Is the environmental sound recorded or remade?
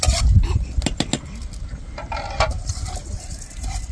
recorded